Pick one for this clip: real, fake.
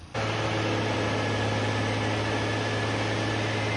real